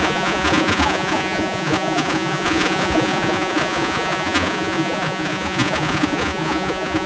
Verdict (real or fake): fake